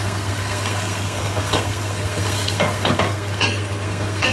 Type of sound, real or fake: fake